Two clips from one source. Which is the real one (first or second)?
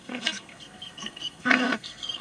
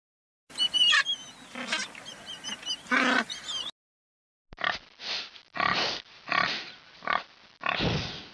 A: second